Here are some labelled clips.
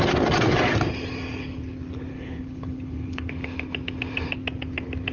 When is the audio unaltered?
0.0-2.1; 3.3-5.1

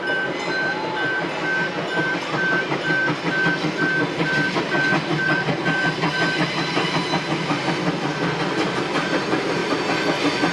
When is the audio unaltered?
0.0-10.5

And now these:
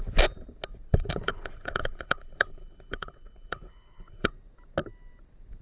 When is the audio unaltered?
0.0-0.9; 4.3-5.6

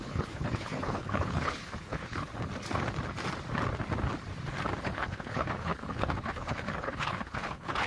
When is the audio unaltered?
2.3-4.8

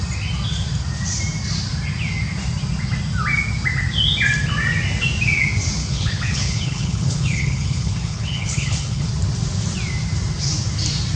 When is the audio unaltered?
0.0-5.8; 9.1-11.2

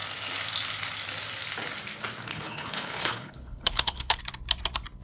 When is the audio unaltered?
0.0-2.3; 4.2-5.0